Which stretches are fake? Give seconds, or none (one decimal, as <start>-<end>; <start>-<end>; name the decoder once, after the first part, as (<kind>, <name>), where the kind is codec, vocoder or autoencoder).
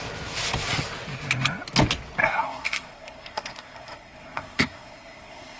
2.2-5.6 (codec, SNAC)